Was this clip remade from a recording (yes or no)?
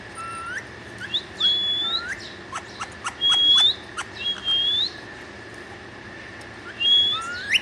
no